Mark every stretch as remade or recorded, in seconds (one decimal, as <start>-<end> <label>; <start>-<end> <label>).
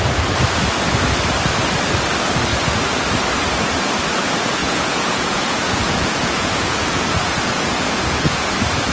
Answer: 0.0-4.6 recorded; 4.6-8.5 remade; 8.5-8.9 recorded